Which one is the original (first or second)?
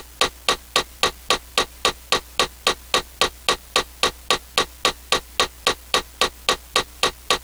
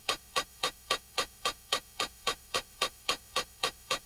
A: first